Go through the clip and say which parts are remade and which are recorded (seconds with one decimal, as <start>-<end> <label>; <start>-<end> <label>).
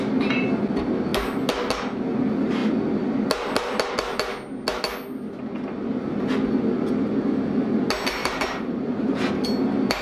0.0-8.2 recorded; 8.2-9.3 remade; 9.3-10.0 recorded